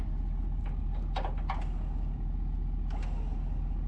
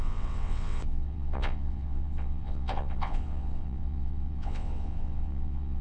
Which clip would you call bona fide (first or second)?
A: first